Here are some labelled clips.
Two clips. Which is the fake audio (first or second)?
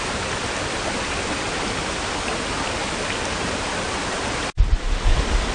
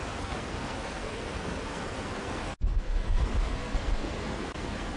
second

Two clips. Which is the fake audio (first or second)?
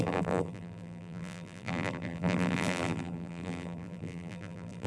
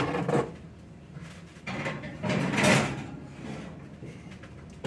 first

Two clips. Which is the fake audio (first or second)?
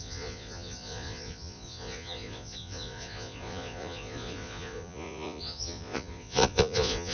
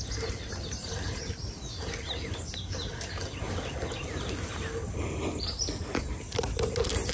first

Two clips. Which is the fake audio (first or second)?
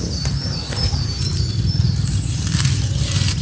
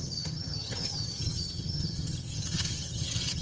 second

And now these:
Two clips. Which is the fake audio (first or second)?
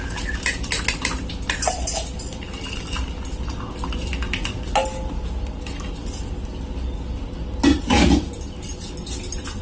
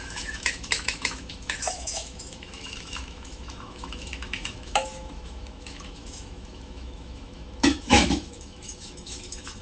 second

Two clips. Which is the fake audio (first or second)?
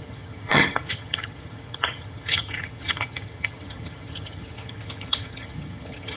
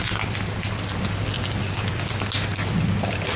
first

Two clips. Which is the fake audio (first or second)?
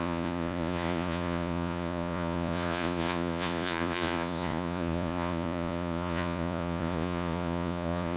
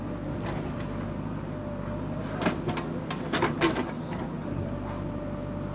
first